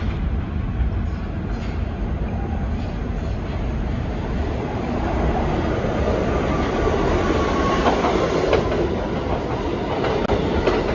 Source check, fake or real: real